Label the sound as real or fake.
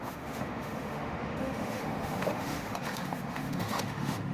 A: fake